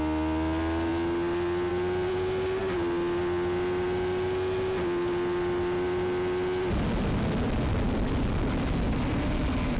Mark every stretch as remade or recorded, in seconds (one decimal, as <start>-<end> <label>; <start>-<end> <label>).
0.0-9.8 recorded

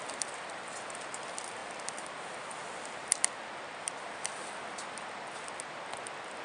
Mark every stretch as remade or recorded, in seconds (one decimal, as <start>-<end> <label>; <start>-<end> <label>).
0.0-6.4 recorded